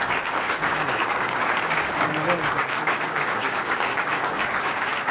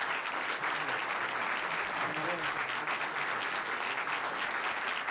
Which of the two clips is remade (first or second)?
first